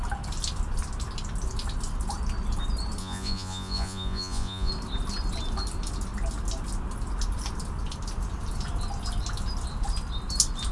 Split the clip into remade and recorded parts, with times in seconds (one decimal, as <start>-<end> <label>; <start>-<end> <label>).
0.0-3.0 recorded; 3.0-4.7 remade; 4.7-10.7 recorded